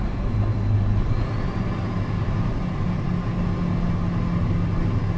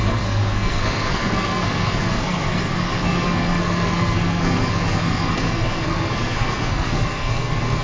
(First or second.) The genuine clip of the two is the first